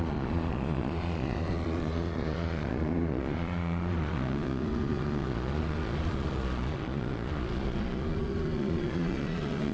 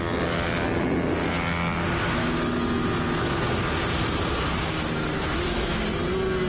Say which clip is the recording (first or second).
second